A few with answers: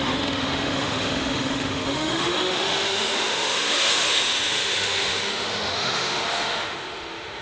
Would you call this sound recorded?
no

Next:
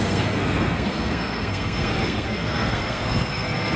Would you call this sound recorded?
no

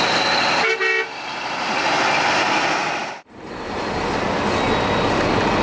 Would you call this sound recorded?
yes